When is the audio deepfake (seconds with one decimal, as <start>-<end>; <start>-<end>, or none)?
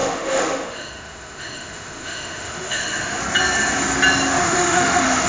0.0-3.2; 4.4-5.3